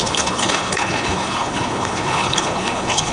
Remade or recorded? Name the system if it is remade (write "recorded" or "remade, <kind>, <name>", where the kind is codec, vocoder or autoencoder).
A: remade, codec, HILCodec